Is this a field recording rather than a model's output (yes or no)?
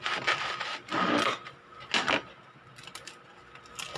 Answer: yes